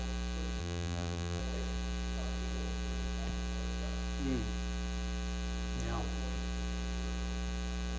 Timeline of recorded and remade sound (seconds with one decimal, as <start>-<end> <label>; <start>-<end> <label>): 0.0-0.6 recorded; 0.6-1.4 remade; 1.4-8.0 recorded

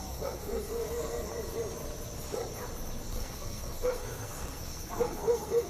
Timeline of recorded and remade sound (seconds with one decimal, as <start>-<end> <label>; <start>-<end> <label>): 0.0-1.3 remade; 1.3-3.1 recorded; 3.1-5.7 remade

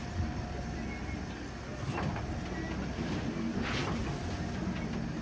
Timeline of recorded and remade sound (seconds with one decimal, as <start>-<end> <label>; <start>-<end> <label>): 0.0-5.2 recorded

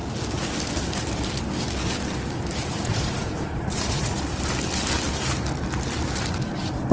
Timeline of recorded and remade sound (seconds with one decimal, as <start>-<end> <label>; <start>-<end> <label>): 0.0-2.6 recorded; 2.6-4.2 remade; 4.2-6.9 recorded

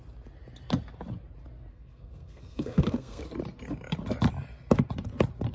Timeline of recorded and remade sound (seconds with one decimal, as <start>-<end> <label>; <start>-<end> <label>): 0.0-1.7 recorded; 1.7-3.2 remade; 3.2-5.5 recorded

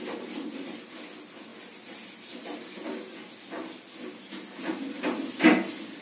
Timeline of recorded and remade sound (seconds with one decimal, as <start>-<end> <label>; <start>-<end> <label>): 0.0-6.0 recorded

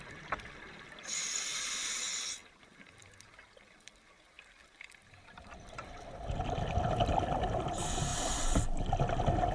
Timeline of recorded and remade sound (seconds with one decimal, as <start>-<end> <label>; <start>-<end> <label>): 0.0-8.1 recorded; 8.1-9.1 remade; 9.1-9.5 recorded